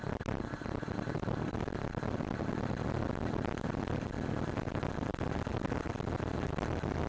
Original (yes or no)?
yes